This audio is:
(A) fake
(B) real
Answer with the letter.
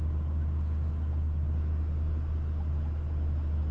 B